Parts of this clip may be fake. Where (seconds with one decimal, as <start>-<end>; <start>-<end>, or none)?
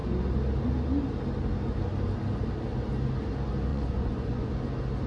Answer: 3.7-4.5